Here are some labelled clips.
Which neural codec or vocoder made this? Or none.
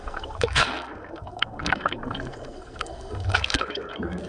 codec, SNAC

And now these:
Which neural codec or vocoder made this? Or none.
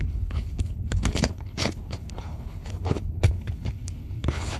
codec, HILCodec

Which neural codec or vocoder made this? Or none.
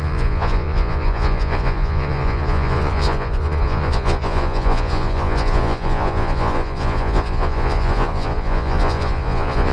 vocoder, Vocos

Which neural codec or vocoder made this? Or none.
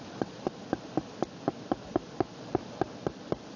none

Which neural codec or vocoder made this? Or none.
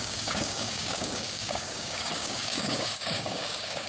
codec, DAC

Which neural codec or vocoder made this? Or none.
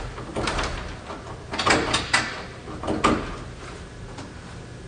none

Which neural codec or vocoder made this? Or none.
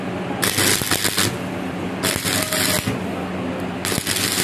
none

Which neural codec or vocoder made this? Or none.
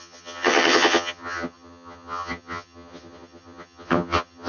vocoder, HiFi-GAN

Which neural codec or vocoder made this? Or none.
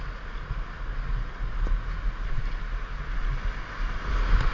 none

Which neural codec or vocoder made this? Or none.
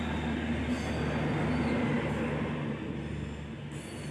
none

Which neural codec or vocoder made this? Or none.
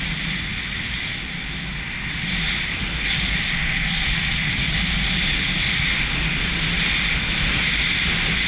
none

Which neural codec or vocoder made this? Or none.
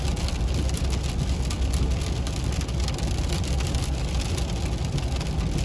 none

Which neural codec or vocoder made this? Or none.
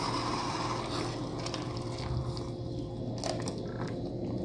none